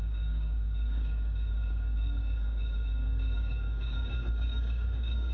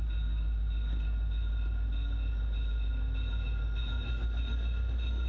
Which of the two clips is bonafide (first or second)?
second